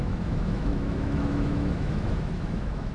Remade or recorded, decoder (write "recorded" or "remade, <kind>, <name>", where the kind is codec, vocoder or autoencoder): remade, autoencoder, DAC-VAE